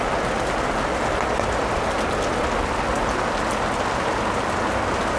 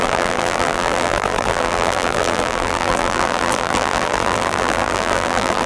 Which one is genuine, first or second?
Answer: first